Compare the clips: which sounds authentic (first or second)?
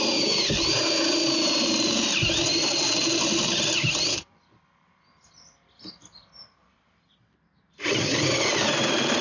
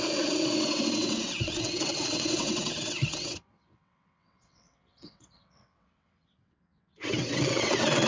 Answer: first